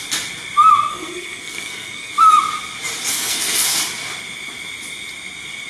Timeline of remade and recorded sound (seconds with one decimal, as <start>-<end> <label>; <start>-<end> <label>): 0.0-0.9 recorded; 0.9-2.1 remade; 2.1-3.1 recorded; 3.1-3.8 remade; 3.8-5.7 recorded